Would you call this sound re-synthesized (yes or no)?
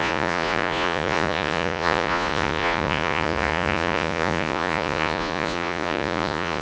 yes